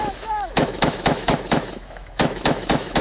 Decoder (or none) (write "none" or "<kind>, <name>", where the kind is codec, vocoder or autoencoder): autoencoder, DAC-VAE